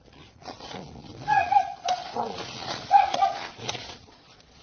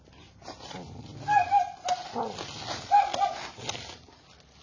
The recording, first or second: second